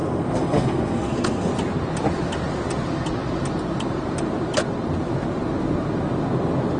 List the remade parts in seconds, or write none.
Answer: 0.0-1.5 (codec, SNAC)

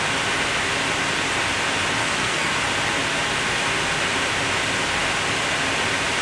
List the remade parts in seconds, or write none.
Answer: 2.0-2.5 (codec, SNAC)

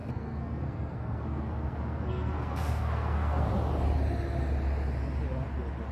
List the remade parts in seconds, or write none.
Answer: 0.0-3.5 (codec, SNAC)

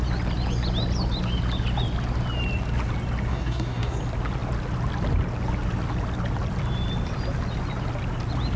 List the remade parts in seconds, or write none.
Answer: 3.3-4.0 (codec, SNAC)

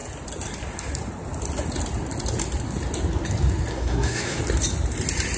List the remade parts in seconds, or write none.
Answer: 3.7-4.4 (codec, SNAC)

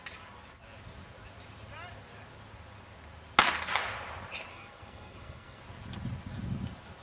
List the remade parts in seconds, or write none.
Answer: 4.5-5.6 (codec, SNAC)

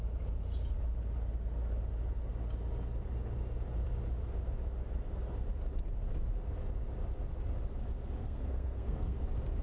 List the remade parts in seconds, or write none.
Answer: 8.2-9.2 (codec, SNAC)

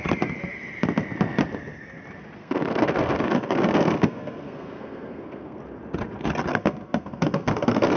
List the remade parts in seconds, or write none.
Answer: 2.4-5.6 (codec, SNAC); 6.5-8.0